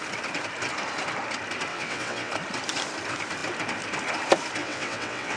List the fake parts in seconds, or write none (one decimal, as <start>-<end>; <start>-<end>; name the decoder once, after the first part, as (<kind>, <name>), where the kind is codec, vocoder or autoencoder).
1.7-2.3 (vocoder, WaveNeXt); 4.6-5.4